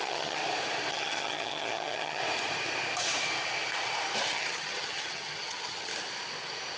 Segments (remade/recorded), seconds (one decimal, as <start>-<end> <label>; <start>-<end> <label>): 0.0-0.4 remade; 0.4-0.9 recorded; 0.9-2.2 remade; 2.2-4.3 recorded; 4.3-5.9 remade; 5.9-6.8 recorded